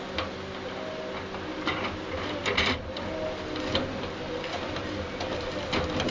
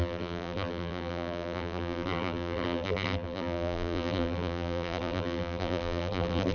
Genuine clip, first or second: first